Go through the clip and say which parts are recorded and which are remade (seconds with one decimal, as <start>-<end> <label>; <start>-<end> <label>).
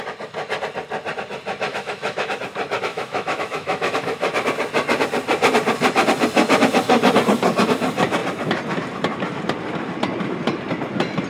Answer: 0.0-1.7 recorded; 1.7-2.4 remade; 2.4-2.9 recorded; 2.9-4.3 remade; 4.3-11.3 recorded